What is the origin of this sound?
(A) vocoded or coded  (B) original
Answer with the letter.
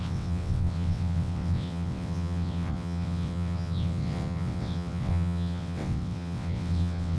A